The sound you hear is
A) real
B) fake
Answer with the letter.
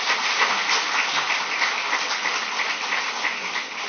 A